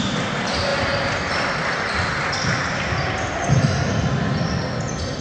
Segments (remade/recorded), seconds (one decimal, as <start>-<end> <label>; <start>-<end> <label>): 0.0-5.2 recorded